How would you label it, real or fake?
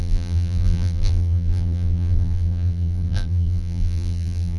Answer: fake